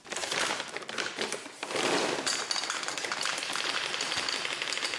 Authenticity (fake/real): fake